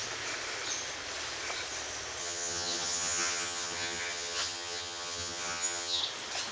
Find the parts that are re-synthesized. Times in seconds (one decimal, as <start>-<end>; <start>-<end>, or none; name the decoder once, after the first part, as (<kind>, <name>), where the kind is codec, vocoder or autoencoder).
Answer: 2.2-6.0 (vocoder, HiFi-GAN)